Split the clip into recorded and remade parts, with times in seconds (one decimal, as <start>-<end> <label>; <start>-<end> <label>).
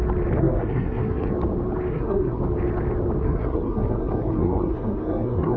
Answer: 0.0-0.4 recorded; 0.4-1.3 remade; 1.3-1.9 recorded; 1.9-2.4 remade; 2.4-3.2 recorded; 3.2-5.6 remade